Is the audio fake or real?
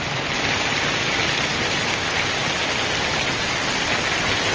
real